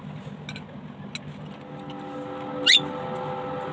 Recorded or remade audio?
recorded